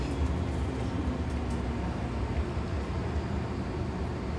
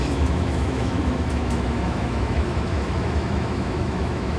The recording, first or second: first